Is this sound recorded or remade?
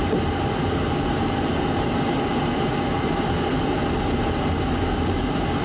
recorded